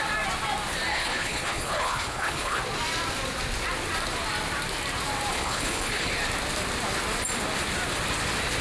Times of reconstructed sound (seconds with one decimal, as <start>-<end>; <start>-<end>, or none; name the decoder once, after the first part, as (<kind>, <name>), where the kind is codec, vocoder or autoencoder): 0.9-2.6 (codec, HILCodec); 5.3-6.1